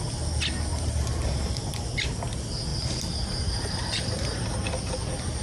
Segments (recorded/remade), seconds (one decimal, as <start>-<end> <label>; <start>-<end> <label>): 0.0-0.7 recorded; 0.7-1.7 remade; 1.7-2.7 recorded; 2.7-5.0 remade; 5.0-5.4 recorded